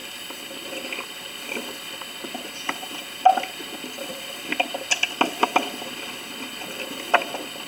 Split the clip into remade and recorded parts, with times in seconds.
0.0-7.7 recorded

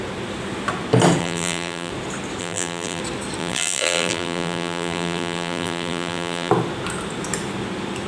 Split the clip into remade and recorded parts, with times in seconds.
0.0-1.2 recorded; 1.2-1.9 remade; 1.9-2.4 recorded; 2.4-3.0 remade; 3.0-3.4 recorded; 3.4-6.5 remade; 6.5-8.1 recorded

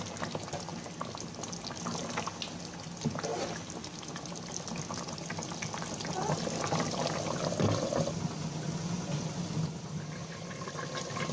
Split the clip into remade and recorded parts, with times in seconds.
0.0-11.3 recorded

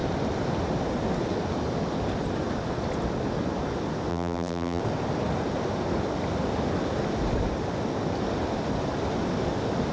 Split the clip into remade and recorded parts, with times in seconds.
0.0-4.1 recorded; 4.1-4.8 remade; 4.8-9.9 recorded

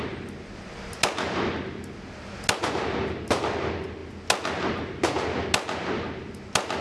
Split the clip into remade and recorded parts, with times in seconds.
0.0-6.8 recorded

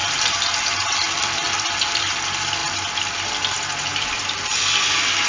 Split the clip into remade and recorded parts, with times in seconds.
0.0-2.2 remade; 2.2-2.6 recorded; 2.6-3.3 remade; 3.3-3.9 recorded; 3.9-4.6 remade; 4.6-5.3 recorded